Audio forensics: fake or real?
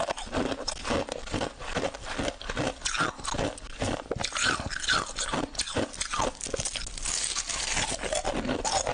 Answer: real